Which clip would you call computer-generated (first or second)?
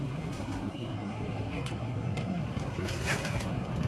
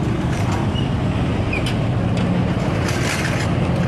first